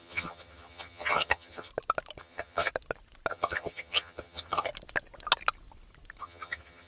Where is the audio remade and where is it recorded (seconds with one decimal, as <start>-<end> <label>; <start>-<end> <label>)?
0.0-1.7 remade; 1.7-2.2 recorded; 2.2-2.7 remade; 2.7-3.3 recorded; 3.3-4.7 remade; 4.7-6.2 recorded; 6.2-6.9 remade